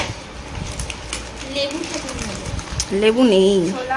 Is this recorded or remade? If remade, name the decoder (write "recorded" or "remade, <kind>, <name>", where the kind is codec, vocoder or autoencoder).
recorded